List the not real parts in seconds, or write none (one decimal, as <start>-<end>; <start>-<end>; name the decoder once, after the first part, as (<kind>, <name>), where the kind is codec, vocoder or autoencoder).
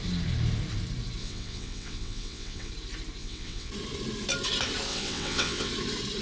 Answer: 1.2-2.7 (vocoder, WaveNeXt); 3.2-3.7; 4.9-5.7